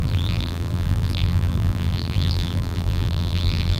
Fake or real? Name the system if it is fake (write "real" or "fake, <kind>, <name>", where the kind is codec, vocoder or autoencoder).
fake, vocoder, BigVGAN v2